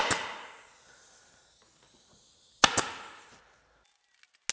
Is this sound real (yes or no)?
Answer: yes